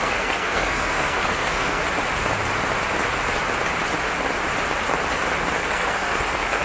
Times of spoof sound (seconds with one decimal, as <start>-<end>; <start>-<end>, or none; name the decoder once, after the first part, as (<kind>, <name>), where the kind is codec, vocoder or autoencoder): 0.0-1.8 (codec, SNAC); 5.6-6.6